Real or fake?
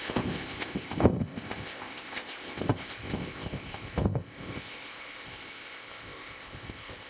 fake